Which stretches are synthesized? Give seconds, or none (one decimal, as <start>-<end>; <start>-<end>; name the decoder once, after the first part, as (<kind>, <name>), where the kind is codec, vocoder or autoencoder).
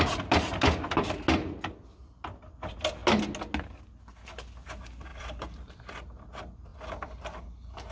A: 5.1-5.8 (vocoder, BigVGAN v2); 6.7-7.9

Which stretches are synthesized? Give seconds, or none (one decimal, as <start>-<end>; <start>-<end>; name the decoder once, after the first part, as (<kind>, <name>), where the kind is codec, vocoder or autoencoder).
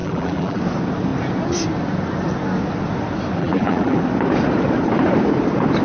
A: 0.0-0.6 (vocoder, BigVGAN v2); 3.4-4.0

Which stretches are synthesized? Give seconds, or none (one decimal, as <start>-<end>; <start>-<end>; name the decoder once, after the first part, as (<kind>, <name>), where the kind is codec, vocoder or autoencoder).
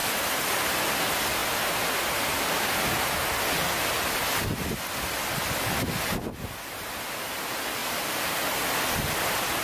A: 0.0-0.6 (vocoder, BigVGAN v2); 7.8-8.4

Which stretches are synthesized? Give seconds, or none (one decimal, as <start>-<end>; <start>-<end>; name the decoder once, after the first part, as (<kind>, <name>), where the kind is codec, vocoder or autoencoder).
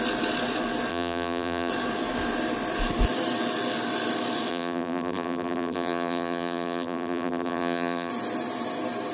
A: 0.9-1.7 (vocoder, BigVGAN v2); 4.5-8.1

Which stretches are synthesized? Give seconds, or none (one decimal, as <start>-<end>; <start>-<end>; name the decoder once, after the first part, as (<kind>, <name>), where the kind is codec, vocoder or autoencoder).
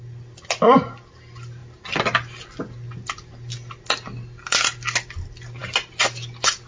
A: none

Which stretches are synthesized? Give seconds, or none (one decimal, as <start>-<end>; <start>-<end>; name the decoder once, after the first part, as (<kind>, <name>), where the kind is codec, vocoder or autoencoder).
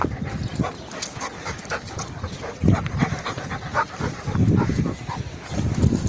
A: 3.7-6.1 (vocoder, BigVGAN v2)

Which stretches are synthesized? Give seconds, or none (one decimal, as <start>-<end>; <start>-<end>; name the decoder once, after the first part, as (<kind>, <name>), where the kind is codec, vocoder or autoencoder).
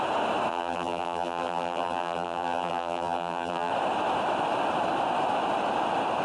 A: 0.5-3.7 (vocoder, BigVGAN v2)